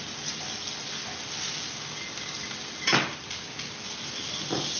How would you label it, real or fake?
real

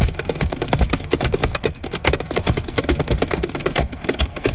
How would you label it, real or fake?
fake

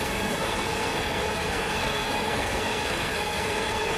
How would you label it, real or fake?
fake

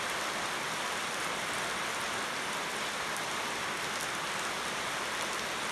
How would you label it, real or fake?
real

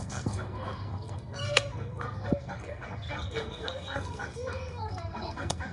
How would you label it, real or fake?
fake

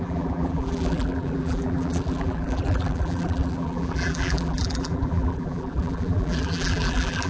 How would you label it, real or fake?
fake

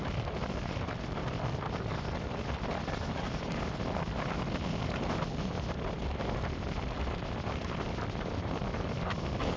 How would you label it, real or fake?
real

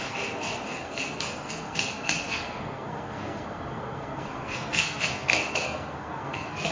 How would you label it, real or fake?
fake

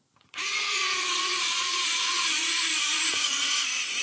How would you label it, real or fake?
fake